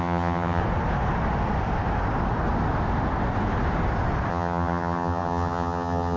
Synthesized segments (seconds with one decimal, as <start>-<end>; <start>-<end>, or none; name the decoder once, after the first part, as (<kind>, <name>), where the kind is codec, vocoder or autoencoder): 0.0-0.6 (vocoder, HiFi-GAN); 4.3-6.2